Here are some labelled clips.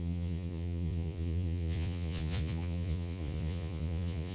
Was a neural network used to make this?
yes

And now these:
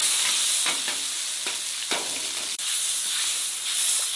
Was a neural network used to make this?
no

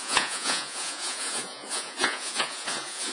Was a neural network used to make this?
yes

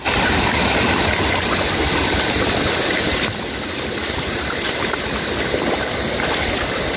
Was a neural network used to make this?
no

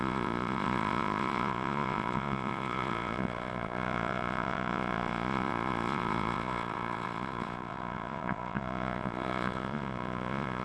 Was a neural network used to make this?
yes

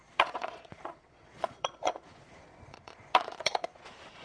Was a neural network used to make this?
yes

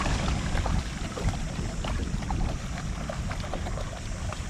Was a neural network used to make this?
no